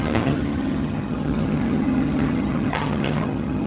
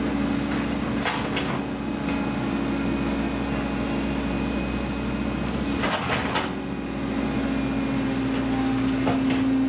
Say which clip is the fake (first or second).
first